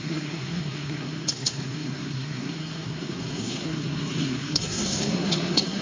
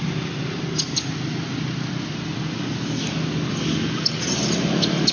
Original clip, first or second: second